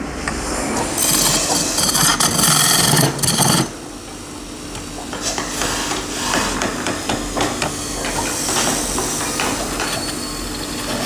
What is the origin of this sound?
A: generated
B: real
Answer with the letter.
B